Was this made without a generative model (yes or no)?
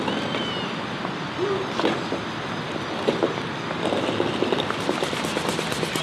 yes